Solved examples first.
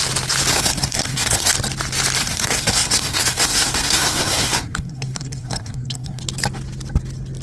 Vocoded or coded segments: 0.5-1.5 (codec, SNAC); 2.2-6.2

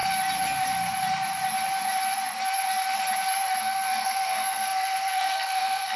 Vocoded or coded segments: 3.6-6.0 (codec, SNAC)

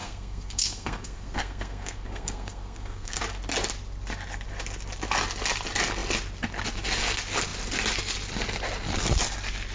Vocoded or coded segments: 0.0-3.2 (codec, SNAC)

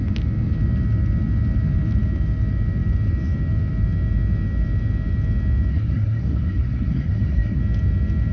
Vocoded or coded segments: 5.7-7.6 (codec, SNAC)

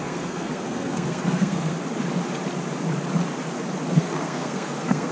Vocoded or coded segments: 0.0-1.7 (codec, SNAC); 3.9-5.1

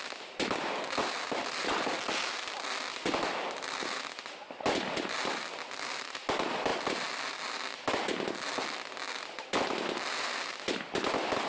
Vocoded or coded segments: none

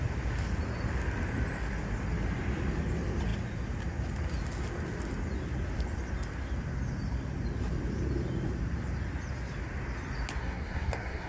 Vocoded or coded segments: 10.4-11.3 (codec, SNAC)

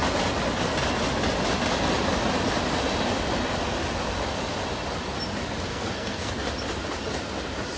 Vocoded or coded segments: 5.7-6.3 (codec, SNAC)